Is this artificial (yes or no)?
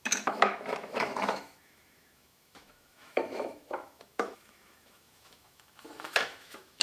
yes